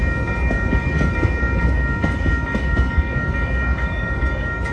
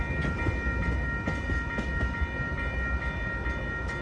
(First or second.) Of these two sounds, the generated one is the first